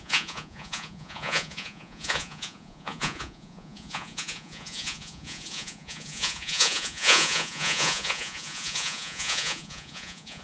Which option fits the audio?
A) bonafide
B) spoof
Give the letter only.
B